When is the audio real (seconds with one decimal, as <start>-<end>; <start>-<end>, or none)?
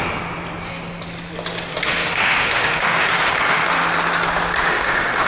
0.0-1.7; 3.7-4.7